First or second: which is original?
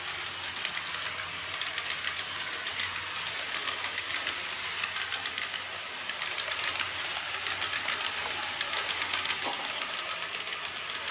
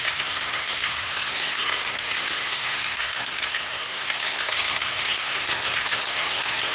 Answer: first